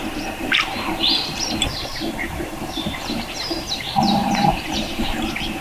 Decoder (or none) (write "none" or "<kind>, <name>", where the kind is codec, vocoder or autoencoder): vocoder, BigVGAN v2